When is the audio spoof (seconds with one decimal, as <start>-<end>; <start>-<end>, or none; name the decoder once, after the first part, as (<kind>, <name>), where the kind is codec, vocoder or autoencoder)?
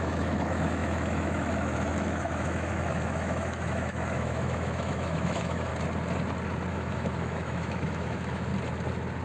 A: 0.0-5.7 (autoencoder, DAC-VAE); 6.7-8.5